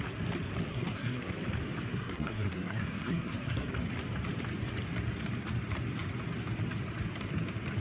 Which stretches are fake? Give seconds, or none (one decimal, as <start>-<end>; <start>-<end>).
0.7-1.3; 1.9-3.7